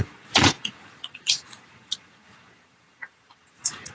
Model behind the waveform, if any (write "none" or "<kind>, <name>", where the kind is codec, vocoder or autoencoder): vocoder, Vocos